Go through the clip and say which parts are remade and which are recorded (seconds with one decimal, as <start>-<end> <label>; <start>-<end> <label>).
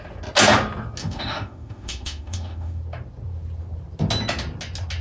0.0-1.0 recorded; 1.0-2.8 remade; 2.8-5.0 recorded